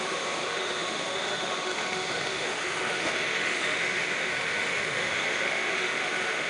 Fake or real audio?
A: fake